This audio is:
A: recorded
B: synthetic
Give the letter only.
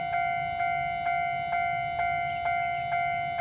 A